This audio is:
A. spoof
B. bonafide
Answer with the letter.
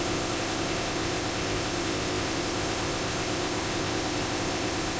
A